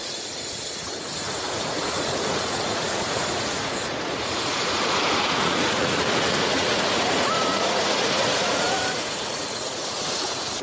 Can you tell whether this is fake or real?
fake